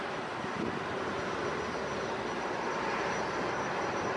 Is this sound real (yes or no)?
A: yes